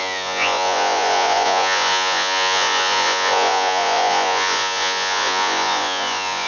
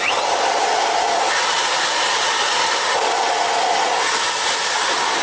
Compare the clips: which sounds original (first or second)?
second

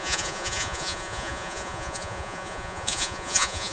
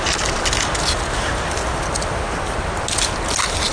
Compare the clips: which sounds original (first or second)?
second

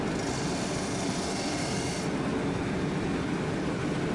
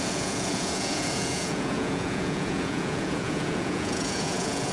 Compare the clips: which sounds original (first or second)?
first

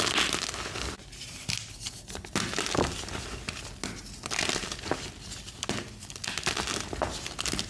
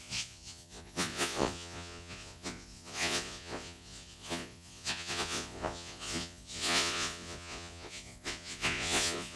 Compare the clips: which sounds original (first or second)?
first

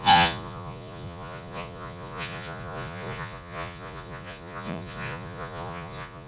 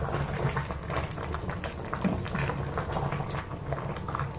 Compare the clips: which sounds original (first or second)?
second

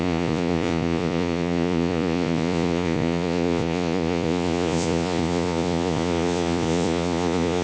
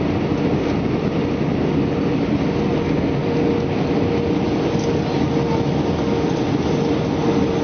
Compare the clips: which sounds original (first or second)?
second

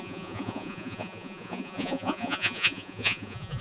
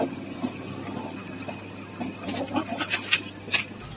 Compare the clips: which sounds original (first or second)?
second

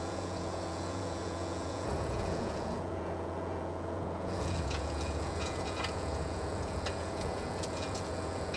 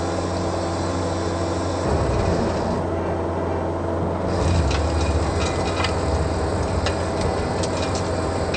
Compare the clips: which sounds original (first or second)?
second